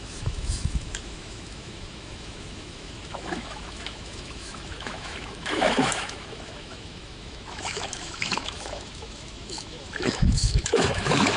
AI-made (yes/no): yes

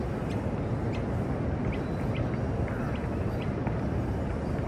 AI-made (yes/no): no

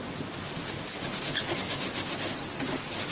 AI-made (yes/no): no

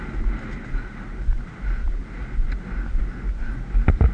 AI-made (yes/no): no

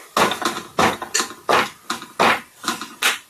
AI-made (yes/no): no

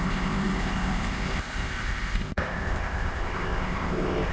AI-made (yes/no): yes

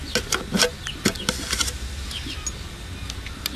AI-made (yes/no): no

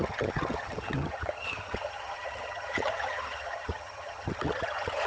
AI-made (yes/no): yes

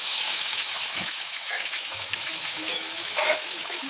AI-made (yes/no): yes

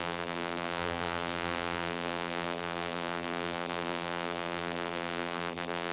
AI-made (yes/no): yes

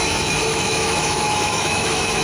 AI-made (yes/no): yes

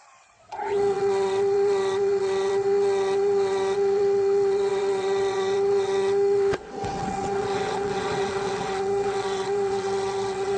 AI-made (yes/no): yes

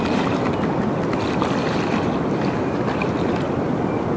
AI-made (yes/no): no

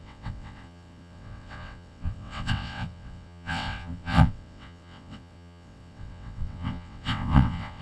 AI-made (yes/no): yes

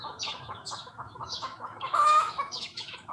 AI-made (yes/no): yes